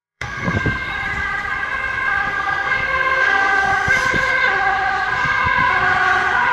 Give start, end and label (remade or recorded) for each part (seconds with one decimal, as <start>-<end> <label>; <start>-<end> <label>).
0.0-0.9 remade; 0.9-2.3 recorded; 2.3-3.7 remade; 3.7-6.5 recorded